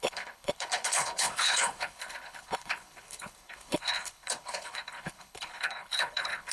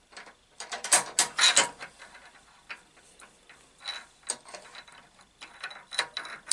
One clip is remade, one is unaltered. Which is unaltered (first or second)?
second